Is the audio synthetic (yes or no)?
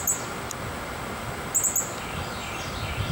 no